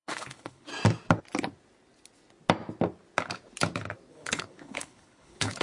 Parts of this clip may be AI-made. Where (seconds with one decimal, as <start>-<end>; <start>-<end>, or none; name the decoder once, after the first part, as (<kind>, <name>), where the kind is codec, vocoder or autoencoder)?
0.0-0.7 (codec, HILCodec); 4.1-5.6